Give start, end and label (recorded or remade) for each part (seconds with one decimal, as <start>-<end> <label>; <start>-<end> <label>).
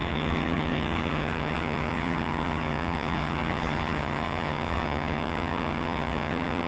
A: 0.0-6.7 remade